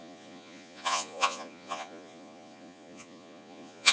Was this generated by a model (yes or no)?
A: yes